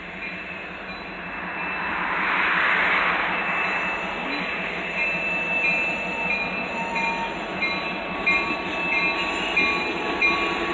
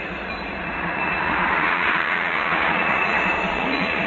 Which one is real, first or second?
first